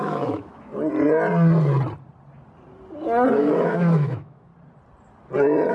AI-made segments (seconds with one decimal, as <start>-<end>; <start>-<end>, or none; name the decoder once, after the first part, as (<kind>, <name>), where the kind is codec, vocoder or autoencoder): 0.0-0.7 (autoencoder, DAC-VAE); 3.3-4.5

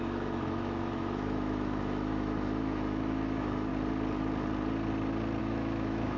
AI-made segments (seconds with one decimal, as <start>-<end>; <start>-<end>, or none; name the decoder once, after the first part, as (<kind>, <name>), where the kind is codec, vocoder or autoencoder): 0.0-3.7 (autoencoder, DAC-VAE); 5.4-6.2

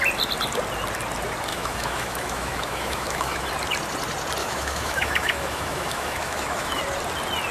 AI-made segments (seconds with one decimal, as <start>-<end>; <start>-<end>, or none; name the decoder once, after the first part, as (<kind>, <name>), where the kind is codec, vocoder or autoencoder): 1.5-3.5 (autoencoder, DAC-VAE); 4.4-6.8